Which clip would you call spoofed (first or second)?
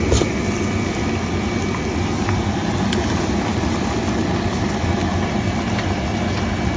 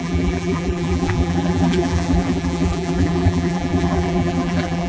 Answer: second